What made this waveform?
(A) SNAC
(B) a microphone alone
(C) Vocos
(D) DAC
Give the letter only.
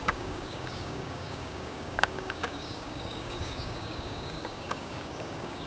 D